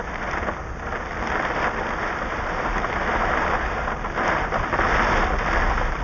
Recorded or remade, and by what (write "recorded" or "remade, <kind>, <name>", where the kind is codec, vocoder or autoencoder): recorded